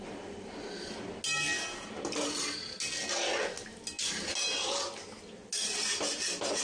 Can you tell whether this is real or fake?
real